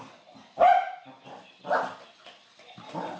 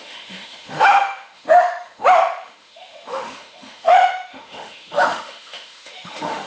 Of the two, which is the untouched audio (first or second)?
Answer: first